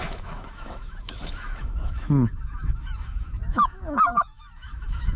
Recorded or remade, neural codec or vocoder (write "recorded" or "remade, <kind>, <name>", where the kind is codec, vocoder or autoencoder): remade, autoencoder, DAC-VAE